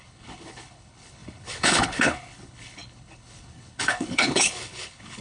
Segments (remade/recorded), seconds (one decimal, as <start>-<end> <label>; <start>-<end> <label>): 0.0-5.2 remade